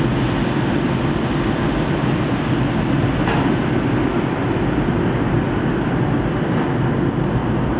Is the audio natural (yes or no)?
yes